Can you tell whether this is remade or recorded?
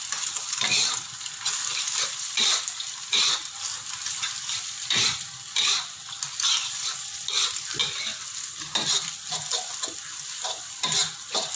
recorded